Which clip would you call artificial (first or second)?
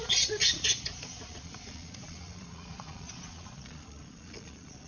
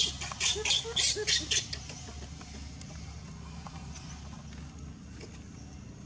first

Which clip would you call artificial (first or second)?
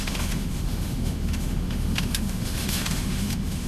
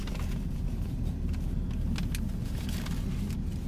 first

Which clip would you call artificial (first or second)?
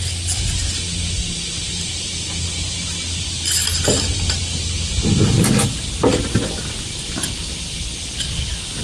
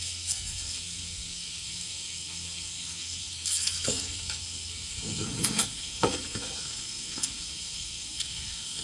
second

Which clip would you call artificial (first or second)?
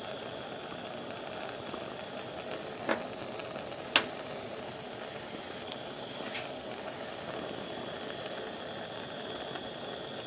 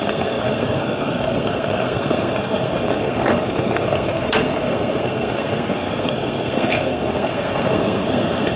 second